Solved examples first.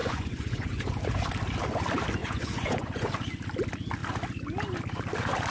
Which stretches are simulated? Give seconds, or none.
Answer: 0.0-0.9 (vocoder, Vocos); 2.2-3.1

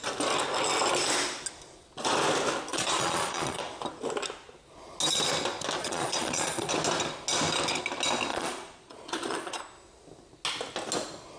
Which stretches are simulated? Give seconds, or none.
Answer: 2.7-3.6 (vocoder, Vocos); 5.8-6.7; 8.3-9.6

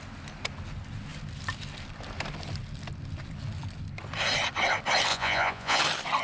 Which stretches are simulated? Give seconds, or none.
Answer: 5.1-5.8 (vocoder, Vocos)

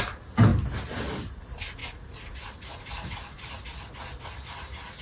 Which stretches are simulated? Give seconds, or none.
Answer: none